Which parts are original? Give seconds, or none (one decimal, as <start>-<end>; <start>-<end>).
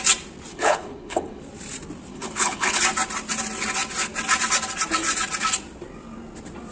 0.0-0.5; 1.4-2.1; 2.8-6.7